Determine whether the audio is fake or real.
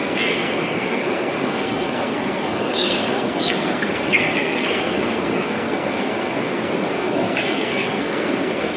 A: fake